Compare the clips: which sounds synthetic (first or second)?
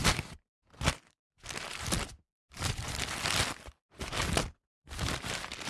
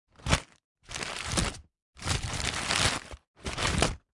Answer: second